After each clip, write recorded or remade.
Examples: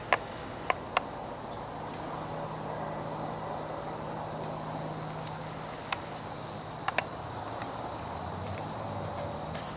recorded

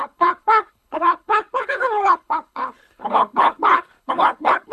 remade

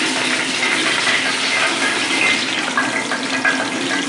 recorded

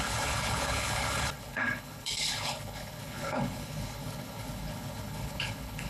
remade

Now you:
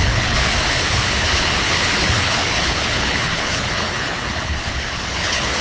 remade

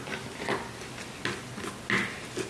recorded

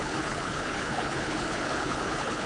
remade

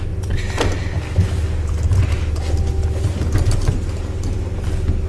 recorded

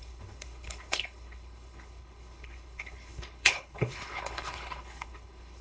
remade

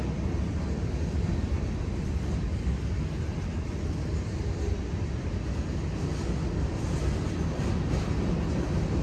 recorded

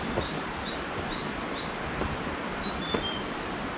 recorded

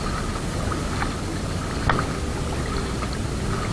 recorded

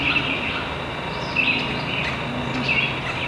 recorded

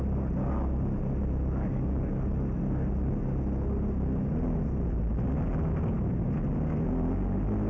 recorded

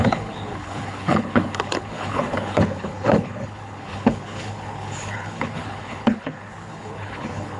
remade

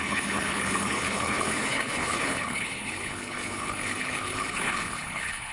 remade